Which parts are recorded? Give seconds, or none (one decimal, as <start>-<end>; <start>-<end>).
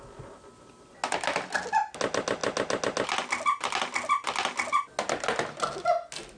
0.0-6.4